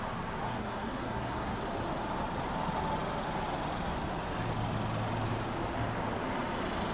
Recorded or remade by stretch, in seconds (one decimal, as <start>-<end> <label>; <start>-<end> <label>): 0.0-0.4 recorded; 0.4-1.6 remade; 1.6-6.9 recorded